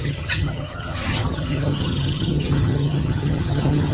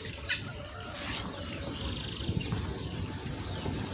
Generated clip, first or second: first